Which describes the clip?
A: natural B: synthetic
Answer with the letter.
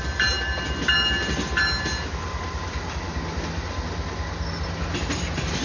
A